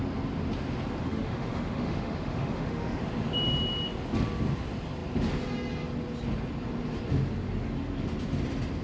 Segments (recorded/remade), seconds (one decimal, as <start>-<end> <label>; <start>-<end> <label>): 0.0-1.0 recorded; 1.0-3.0 remade; 3.0-8.8 recorded